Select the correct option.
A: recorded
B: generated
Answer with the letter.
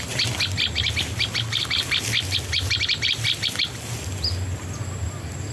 A